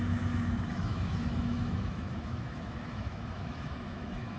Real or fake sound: fake